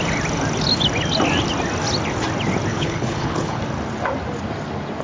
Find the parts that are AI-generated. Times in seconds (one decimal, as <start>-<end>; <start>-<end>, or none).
2.7-3.6